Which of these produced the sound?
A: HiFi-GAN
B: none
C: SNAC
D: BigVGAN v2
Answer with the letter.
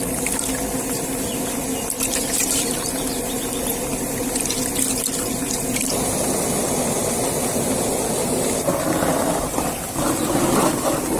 B